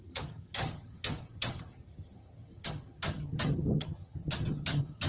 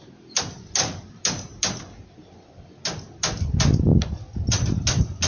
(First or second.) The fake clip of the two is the first